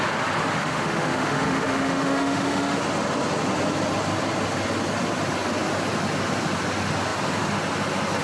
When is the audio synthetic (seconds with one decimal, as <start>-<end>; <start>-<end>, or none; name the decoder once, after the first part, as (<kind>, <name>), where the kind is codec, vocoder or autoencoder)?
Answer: 0.6-2.8 (autoencoder, DAC-VAE)